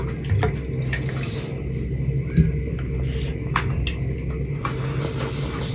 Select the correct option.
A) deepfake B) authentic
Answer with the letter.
B